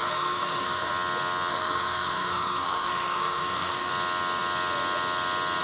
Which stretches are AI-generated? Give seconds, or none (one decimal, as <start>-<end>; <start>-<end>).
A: 0.0-0.9; 1.5-3.9